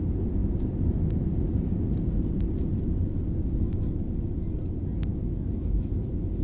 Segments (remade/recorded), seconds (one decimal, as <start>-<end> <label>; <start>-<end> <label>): 0.0-5.1 recorded; 5.1-5.9 remade; 5.9-6.4 recorded